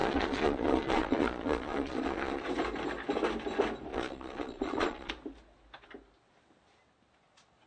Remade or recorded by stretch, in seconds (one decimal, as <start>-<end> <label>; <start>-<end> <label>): 0.0-2.4 remade; 2.4-3.9 recorded; 3.9-5.1 remade; 5.1-7.7 recorded